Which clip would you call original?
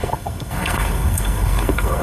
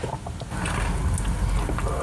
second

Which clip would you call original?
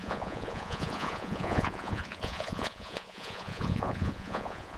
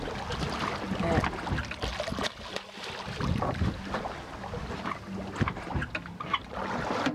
second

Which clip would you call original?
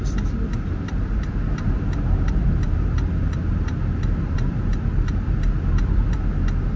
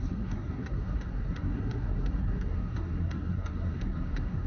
first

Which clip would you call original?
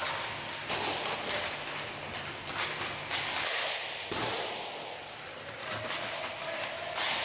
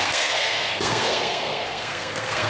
first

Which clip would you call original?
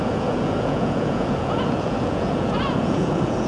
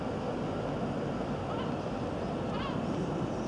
second